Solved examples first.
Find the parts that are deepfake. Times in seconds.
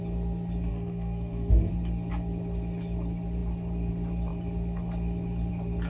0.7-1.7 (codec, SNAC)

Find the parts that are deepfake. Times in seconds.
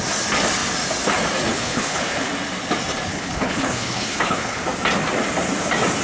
1.5-2.3 (codec, HILCodec); 3.1-4.6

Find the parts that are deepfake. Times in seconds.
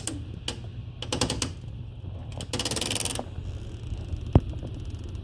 none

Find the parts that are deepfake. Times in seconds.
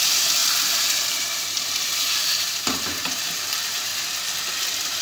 0.0-3.9 (vocoder, BigVGAN v2)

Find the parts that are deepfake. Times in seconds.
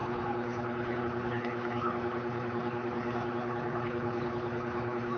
0.0-5.2 (codec, HILCodec)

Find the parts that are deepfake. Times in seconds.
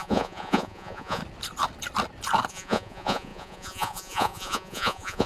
0.0-1.2 (vocoder, Vocos); 2.5-5.3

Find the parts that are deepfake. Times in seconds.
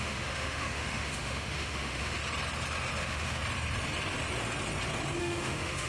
0.0-2.2 (autoencoder, DAC-VAE); 3.0-3.4; 5.2-5.9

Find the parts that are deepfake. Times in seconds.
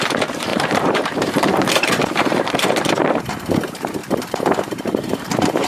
0.0-4.0 (vocoder, BigVGAN v2); 4.6-5.7